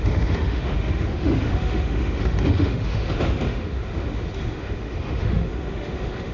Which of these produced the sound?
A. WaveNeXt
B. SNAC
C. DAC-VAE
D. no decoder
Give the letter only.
C